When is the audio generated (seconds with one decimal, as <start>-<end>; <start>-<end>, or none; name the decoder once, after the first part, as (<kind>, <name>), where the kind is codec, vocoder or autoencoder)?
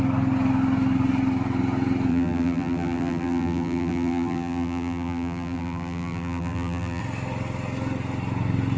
2.1-7.0 (vocoder, BigVGAN v2)